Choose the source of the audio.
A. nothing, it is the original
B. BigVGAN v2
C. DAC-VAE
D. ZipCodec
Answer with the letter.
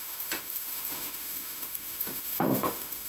C